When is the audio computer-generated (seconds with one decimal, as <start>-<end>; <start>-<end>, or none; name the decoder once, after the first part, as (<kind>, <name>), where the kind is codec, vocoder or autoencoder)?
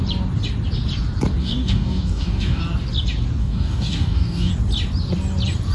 1.4-2.6 (codec, DAC); 3.4-4.5